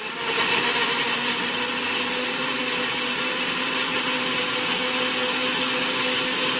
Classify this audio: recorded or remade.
recorded